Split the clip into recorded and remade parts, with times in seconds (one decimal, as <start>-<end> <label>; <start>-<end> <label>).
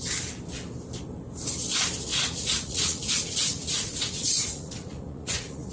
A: 0.0-2.1 recorded; 2.1-5.7 remade